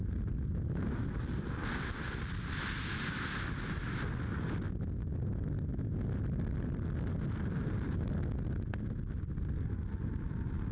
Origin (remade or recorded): recorded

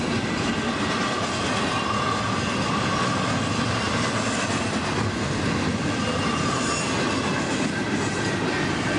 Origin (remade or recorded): recorded